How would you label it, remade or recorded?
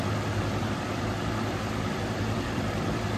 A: remade